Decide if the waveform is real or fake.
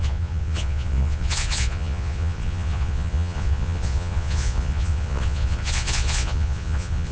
fake